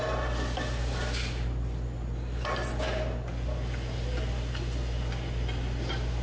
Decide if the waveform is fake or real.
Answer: real